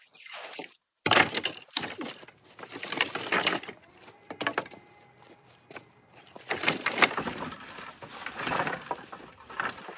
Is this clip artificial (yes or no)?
no